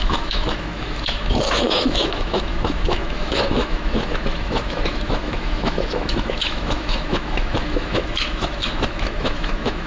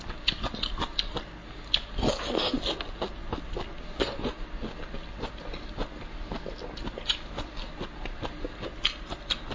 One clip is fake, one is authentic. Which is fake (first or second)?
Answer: first